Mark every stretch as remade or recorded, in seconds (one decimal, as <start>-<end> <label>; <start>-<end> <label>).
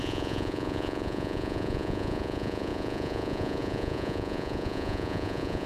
0.0-5.7 remade